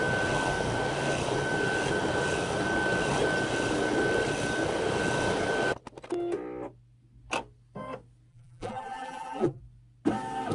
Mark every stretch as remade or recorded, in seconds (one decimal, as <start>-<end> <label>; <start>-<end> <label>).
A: 0.0-8.3 recorded; 8.3-9.6 remade; 9.6-10.5 recorded